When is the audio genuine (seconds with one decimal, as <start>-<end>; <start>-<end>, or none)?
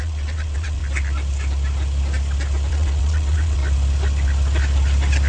0.8-2.7; 3.6-5.3